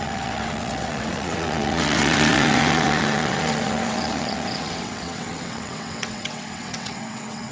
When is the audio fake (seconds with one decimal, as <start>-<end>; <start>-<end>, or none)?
0.0-7.5